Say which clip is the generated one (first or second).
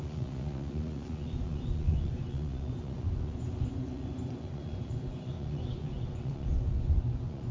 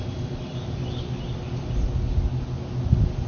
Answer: first